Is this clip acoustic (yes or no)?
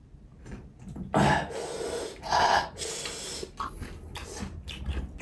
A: yes